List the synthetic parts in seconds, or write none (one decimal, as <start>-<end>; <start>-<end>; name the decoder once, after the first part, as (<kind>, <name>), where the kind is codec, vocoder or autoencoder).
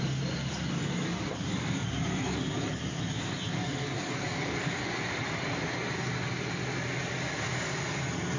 3.6-4.9 (codec, DAC)